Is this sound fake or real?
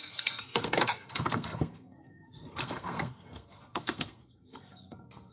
fake